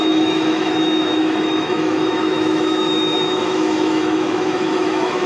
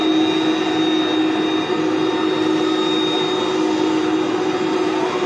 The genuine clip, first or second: second